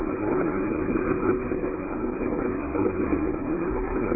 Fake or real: fake